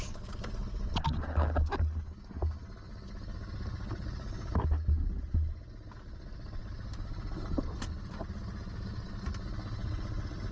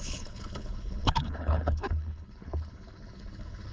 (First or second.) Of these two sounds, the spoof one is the second